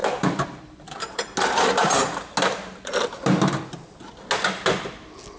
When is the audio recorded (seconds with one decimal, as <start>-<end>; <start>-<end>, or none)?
1.3-5.4